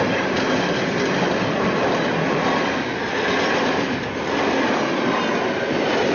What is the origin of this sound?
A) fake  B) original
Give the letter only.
B